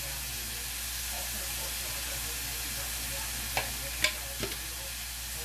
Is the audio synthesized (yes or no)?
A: no